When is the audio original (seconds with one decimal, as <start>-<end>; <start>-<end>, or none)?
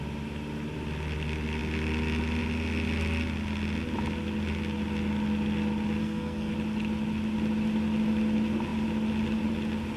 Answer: 0.0-6.0; 6.5-10.0